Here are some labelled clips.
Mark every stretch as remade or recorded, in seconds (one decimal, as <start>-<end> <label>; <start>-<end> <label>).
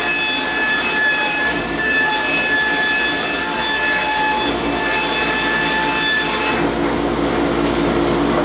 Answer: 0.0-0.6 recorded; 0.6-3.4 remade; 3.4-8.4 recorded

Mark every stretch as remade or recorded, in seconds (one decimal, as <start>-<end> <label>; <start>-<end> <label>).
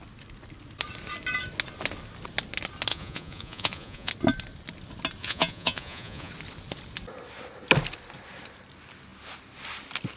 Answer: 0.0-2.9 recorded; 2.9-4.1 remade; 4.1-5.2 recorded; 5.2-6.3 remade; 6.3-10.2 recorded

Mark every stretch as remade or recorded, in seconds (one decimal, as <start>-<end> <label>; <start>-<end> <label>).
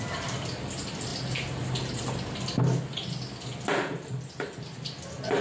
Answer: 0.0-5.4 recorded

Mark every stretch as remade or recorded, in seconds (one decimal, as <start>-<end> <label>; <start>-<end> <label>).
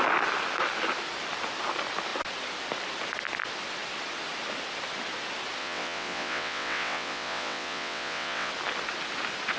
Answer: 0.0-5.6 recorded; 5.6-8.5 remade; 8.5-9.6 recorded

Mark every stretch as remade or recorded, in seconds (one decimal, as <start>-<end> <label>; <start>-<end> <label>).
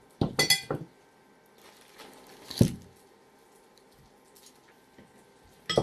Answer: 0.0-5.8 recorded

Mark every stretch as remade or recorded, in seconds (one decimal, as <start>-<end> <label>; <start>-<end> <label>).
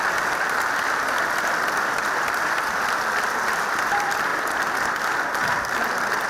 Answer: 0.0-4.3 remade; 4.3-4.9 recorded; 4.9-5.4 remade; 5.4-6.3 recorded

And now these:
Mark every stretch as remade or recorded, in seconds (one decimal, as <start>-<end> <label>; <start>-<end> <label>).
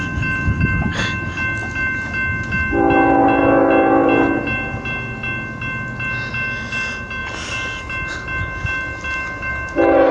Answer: 0.0-10.1 recorded